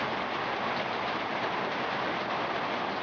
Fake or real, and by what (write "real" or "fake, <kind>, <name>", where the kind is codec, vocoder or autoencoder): real